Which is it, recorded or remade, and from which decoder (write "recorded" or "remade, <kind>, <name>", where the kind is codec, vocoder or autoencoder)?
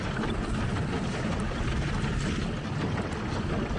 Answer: recorded